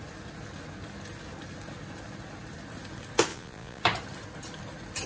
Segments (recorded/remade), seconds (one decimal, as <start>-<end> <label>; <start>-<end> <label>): 0.0-3.3 recorded; 3.3-3.8 remade; 3.8-5.1 recorded